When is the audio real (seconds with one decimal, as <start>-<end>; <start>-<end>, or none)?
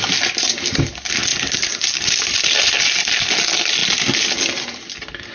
0.0-1.3; 2.4-5.3